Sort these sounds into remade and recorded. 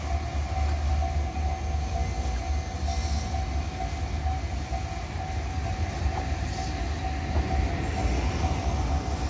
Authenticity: recorded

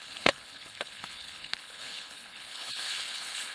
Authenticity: remade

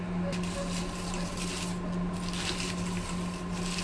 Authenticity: recorded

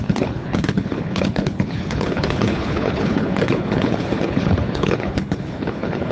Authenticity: remade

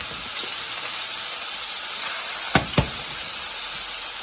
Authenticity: recorded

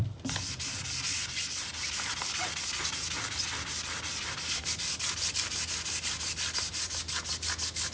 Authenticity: recorded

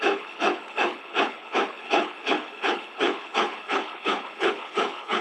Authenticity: remade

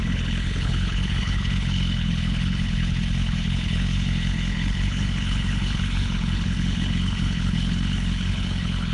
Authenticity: remade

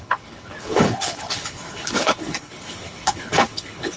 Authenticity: remade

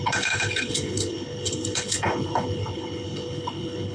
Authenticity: remade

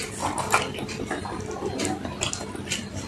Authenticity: recorded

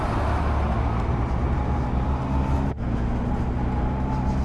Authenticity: recorded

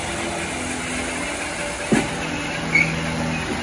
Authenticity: recorded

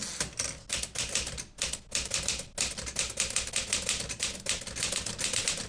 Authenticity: recorded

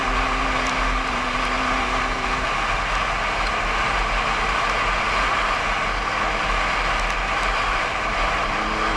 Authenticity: recorded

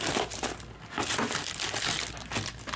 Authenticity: recorded